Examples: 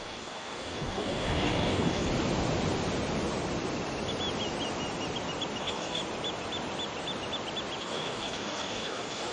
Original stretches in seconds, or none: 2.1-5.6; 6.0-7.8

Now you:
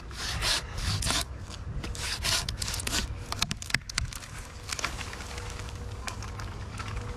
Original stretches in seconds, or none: none

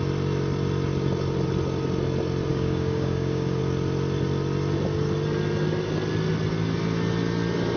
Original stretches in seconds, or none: 0.0-2.5; 3.6-7.8

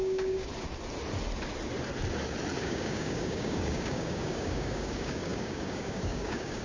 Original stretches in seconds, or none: 0.5-2.6

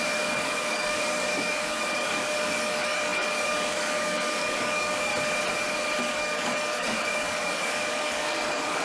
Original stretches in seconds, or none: 5.1-6.0

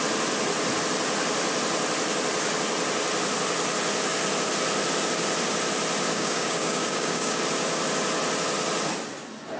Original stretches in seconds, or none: 0.0-6.1; 7.4-9.6